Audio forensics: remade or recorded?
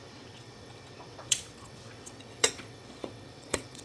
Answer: remade